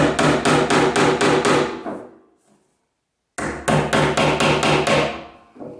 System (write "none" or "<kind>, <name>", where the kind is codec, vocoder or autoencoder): none